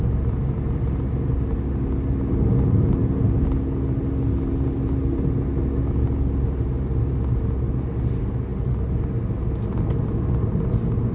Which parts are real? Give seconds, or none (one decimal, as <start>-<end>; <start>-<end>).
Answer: 0.0-11.1